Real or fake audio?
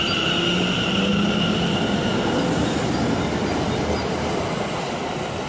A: real